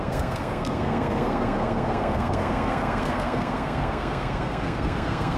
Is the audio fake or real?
fake